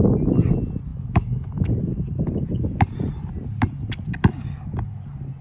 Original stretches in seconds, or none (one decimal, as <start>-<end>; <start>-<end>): 0.0-0.9; 1.8-5.4